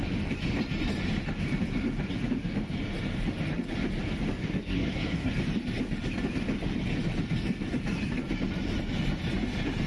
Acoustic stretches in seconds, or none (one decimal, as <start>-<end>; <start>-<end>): 0.0-4.4; 5.3-9.9